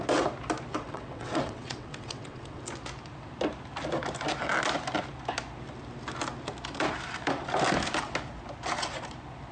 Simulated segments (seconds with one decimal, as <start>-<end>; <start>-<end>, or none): 0.7-2.6